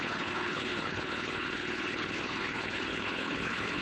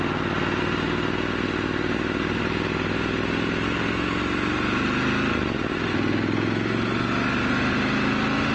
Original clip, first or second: second